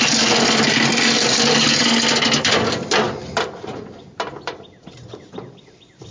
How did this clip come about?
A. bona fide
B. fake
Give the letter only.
A